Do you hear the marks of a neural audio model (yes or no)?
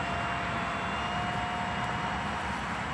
no